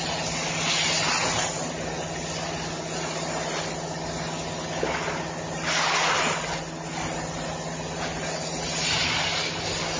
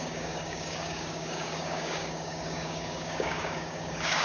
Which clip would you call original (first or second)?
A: first